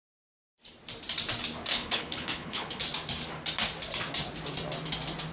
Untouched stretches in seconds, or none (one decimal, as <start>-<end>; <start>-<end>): 0.0-1.7; 2.8-5.3